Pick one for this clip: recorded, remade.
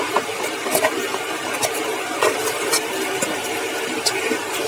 remade